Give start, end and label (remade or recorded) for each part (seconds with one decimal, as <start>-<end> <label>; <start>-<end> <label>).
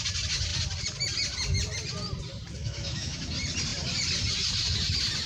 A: 0.0-2.6 recorded; 2.6-3.2 remade; 3.2-5.3 recorded